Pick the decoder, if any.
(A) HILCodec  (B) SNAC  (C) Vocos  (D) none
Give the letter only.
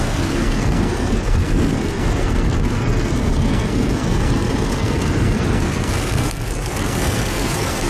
B